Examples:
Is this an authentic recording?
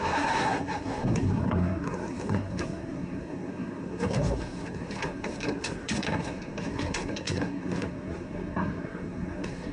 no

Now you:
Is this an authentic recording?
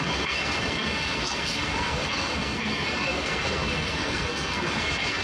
no